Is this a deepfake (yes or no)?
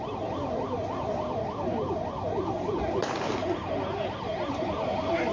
no